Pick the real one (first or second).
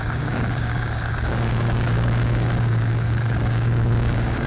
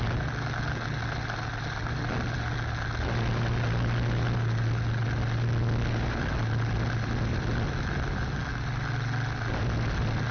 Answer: second